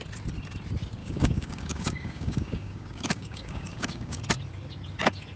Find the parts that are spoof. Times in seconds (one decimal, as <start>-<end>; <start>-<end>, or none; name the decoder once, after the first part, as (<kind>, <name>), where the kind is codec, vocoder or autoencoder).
1.0-4.2 (codec, DAC)